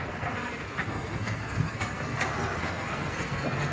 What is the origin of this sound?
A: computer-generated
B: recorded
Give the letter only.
A